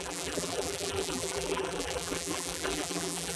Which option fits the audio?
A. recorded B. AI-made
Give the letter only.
B